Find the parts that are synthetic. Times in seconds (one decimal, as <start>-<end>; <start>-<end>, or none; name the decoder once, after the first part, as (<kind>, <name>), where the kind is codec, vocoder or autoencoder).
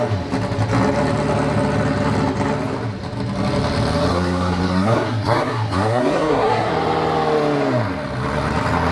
4.1-6.7 (codec, SNAC)